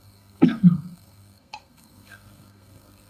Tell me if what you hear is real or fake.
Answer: fake